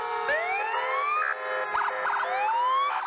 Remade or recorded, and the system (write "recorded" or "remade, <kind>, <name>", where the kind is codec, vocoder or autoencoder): recorded